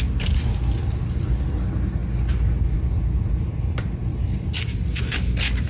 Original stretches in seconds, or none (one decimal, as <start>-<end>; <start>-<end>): 0.0-5.7